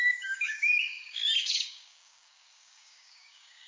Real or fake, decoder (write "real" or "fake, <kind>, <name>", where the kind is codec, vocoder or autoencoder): fake, codec, DAC